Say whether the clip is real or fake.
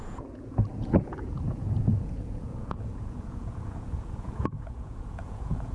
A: fake